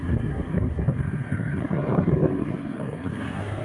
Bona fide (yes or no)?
no